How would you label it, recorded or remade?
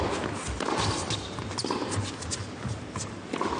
recorded